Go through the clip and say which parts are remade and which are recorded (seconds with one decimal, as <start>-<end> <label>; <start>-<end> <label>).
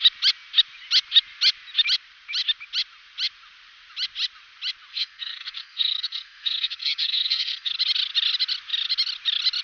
0.0-4.9 recorded; 4.9-7.7 remade; 7.7-9.6 recorded